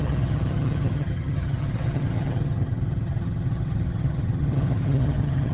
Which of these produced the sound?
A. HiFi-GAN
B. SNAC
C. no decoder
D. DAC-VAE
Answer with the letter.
A